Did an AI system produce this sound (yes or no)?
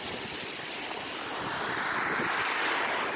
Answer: no